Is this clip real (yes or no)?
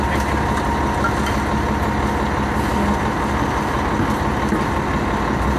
yes